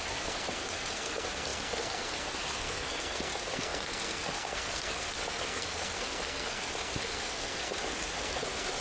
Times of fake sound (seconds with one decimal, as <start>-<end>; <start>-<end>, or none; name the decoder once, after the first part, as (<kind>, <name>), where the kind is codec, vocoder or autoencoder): 0.0-8.8 (codec, SNAC)